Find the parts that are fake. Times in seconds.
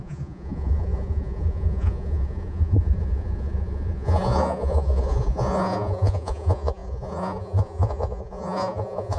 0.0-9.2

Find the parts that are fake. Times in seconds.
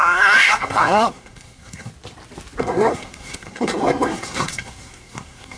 0.0-1.9; 2.6-5.6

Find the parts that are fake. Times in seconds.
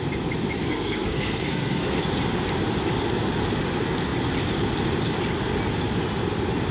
0.6-2.0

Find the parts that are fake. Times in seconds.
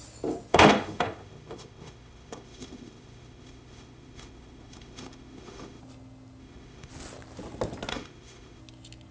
0.5-5.8; 6.4-6.9; 7.9-8.6